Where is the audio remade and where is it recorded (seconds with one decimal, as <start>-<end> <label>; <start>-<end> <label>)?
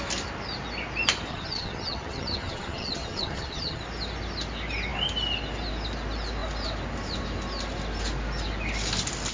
0.0-1.3 recorded; 1.3-3.8 remade; 3.8-9.3 recorded